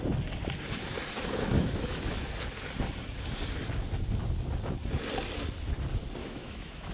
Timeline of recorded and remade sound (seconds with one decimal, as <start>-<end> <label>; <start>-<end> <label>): 0.0-1.5 recorded; 1.5-2.2 remade; 2.2-6.2 recorded; 6.2-6.9 remade